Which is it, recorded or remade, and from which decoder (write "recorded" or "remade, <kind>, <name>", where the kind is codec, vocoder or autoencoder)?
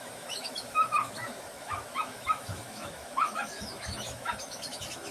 remade, autoencoder, DAC-VAE